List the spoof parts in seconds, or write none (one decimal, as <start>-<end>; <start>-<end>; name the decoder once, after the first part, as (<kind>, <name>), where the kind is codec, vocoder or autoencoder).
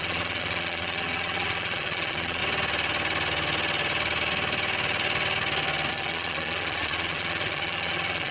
0.0-2.4 (vocoder, Vocos); 5.9-8.3